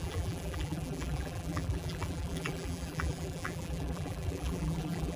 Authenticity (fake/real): fake